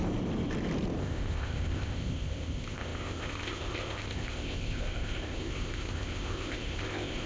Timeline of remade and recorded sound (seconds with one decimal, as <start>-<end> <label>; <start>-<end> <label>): 0.0-1.0 recorded; 1.0-7.3 remade